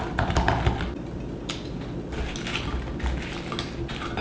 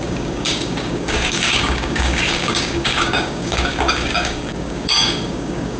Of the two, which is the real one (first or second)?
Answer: first